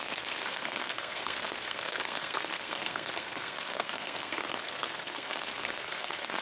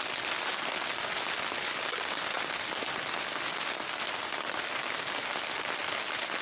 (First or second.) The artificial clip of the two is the first